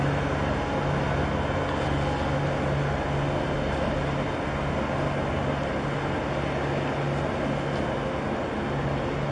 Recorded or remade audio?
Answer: recorded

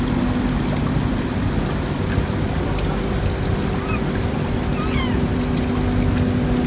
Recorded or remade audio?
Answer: recorded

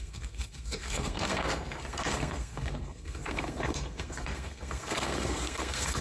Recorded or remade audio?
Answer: remade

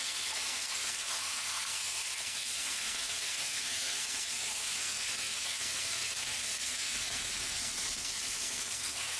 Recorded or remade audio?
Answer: remade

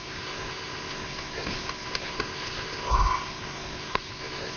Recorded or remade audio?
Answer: remade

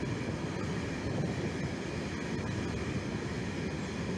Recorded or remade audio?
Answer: recorded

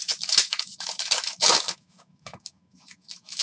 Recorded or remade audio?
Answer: remade